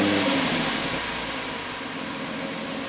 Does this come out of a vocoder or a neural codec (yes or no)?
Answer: no